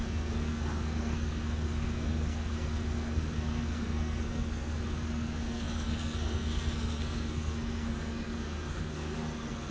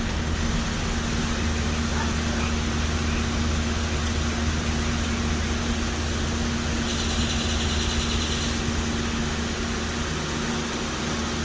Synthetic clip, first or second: first